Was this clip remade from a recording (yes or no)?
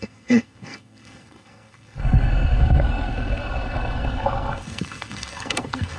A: yes